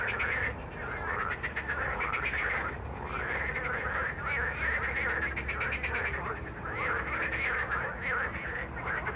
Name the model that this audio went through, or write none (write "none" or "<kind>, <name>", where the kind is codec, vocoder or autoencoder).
none